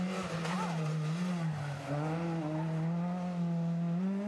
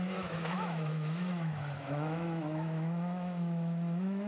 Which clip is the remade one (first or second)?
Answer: second